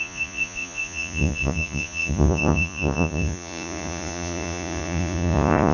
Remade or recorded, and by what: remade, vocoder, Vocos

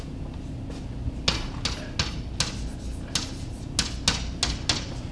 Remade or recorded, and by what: recorded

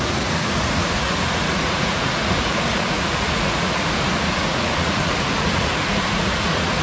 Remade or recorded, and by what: remade, vocoder, Vocos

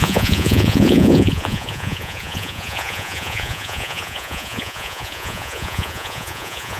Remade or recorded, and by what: remade, vocoder, Vocos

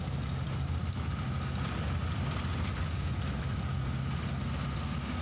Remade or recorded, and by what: recorded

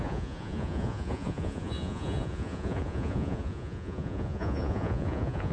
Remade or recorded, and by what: remade, vocoder, Vocos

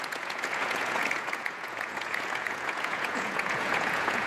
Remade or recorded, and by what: remade, vocoder, Vocos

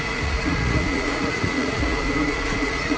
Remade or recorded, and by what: remade, vocoder, Vocos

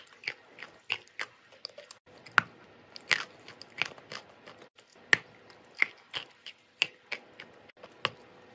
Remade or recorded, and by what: recorded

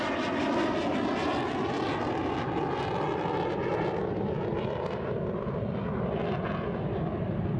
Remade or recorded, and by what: recorded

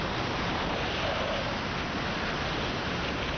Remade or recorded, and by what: recorded